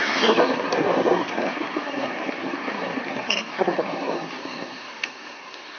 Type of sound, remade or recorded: remade